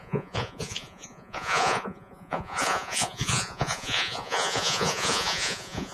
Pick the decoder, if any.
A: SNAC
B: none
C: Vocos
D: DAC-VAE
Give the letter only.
C